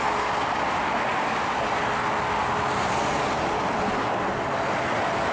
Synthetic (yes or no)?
no